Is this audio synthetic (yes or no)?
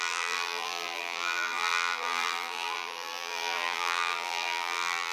yes